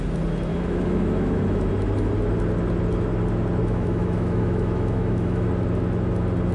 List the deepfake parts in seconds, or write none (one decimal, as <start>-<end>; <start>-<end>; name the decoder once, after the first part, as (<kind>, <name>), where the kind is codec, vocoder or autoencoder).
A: 0.5-1.7 (autoencoder, DAC-VAE); 3.6-5.5